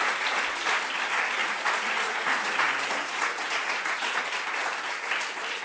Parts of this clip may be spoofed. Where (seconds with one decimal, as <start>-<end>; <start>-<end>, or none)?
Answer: 1.4-4.4